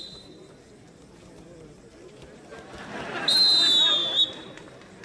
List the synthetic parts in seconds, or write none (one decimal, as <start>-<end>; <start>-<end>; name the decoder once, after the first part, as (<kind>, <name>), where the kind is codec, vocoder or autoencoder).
none

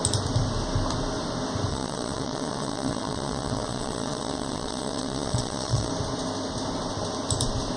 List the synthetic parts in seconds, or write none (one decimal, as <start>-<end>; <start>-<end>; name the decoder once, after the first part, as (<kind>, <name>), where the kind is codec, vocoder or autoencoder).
1.7-5.9 (vocoder, WaveNeXt)

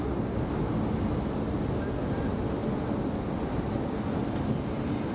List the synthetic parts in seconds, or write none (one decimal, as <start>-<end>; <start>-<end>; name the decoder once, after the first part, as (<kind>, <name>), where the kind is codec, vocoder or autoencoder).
none

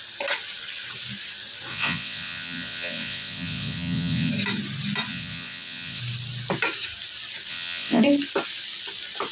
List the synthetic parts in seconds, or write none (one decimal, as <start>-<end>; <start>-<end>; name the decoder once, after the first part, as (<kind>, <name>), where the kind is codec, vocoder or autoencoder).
1.7-4.3 (vocoder, WaveNeXt); 5.1-6.0; 7.5-8.0